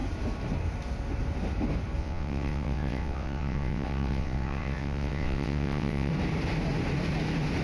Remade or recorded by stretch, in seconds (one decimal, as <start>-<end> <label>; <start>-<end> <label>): 0.0-2.0 recorded; 2.0-6.1 remade; 6.1-7.6 recorded